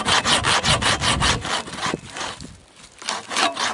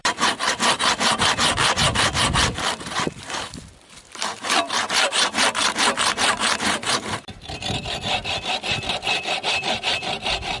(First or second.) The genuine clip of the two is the first